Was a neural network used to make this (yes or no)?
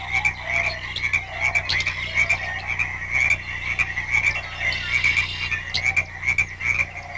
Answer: no